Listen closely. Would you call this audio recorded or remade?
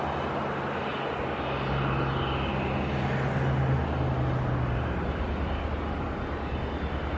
recorded